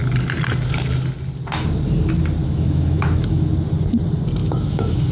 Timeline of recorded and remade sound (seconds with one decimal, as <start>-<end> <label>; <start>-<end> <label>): 0.0-2.4 recorded; 2.4-3.5 remade; 3.5-4.4 recorded; 4.4-5.1 remade